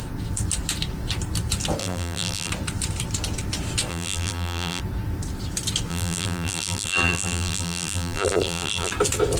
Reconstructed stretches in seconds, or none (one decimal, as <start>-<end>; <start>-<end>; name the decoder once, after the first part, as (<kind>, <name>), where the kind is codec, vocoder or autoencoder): 1.8-2.5 (vocoder, BigVGAN v2); 3.9-4.8; 5.9-8.9